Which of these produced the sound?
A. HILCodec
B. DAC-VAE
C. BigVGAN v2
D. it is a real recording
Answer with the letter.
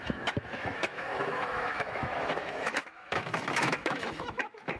B